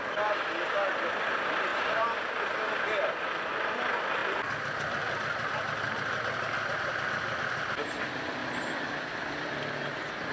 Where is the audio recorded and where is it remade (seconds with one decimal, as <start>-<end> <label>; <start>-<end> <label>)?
0.0-10.3 recorded